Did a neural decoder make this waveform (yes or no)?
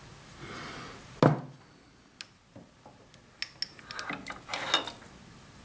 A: no